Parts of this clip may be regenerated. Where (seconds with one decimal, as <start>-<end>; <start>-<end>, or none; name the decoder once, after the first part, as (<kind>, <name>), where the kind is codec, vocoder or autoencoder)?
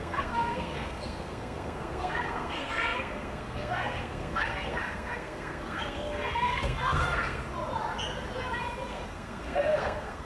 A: 0.0-7.4 (codec, SNAC); 8.9-10.3